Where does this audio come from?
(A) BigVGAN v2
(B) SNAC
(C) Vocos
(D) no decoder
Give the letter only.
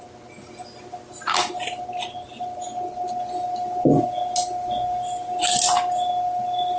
D